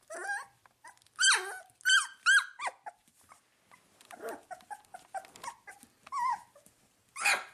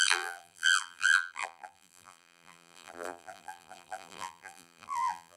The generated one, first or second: second